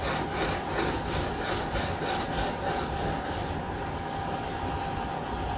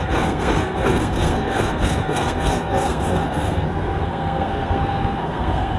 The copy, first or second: second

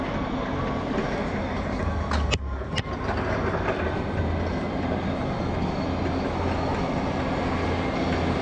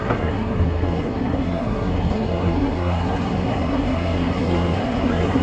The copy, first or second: second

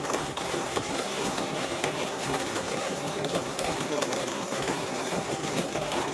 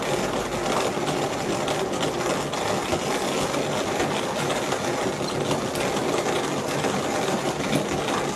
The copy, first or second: first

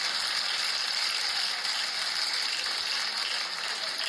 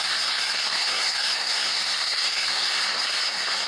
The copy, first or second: second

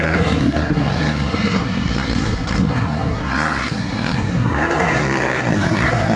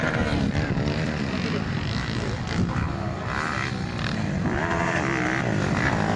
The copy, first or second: first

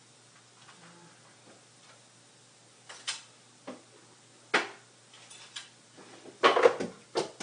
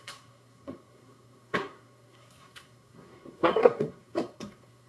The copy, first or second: second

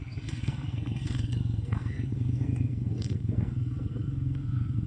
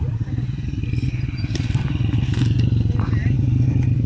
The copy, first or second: first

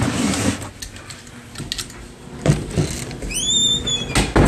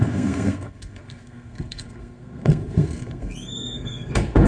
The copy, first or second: second